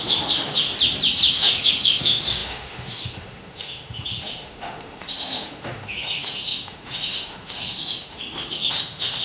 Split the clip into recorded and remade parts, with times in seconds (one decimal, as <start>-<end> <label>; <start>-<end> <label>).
0.0-0.7 remade; 0.7-1.3 recorded; 1.3-9.2 remade